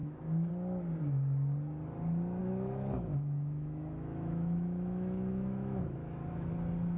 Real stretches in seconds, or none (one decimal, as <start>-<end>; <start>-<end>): 0.5-2.4; 6.5-7.0